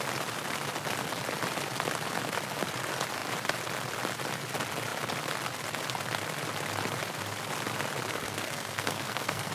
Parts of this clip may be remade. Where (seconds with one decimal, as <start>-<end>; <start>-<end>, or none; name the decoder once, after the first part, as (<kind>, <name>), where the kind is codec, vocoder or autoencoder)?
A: 8.1-9.5 (codec, SNAC)